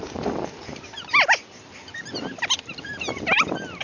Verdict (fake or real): real